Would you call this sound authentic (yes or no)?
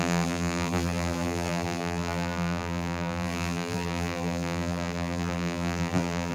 no